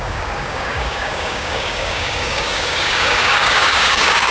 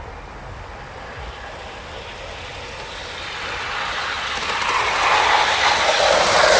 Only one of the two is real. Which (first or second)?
second